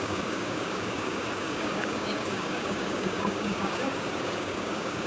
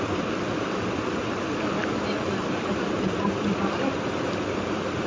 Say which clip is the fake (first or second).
first